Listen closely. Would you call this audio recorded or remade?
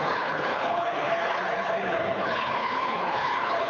remade